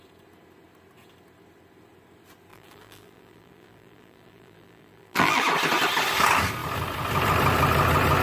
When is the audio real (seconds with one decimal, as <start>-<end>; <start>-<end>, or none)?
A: 0.0-2.5; 5.4-8.2